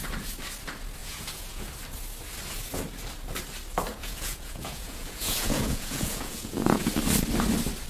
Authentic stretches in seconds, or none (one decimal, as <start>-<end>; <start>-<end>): 0.0-1.0; 1.7-3.9; 6.9-7.9